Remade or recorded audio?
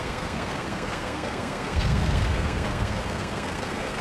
remade